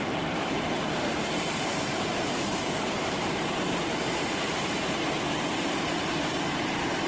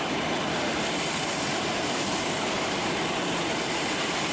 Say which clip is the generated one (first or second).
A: first